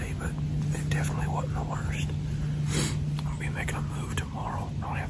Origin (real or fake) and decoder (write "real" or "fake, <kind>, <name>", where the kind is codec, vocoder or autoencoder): real